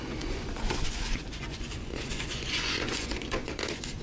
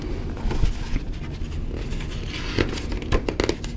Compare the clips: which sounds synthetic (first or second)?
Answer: first